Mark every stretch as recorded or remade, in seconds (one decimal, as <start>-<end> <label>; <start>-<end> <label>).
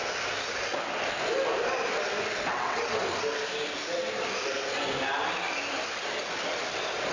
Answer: 0.0-2.5 recorded; 2.5-3.0 remade; 3.0-7.1 recorded